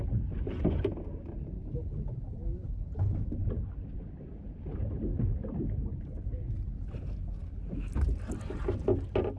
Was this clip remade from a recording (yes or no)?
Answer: no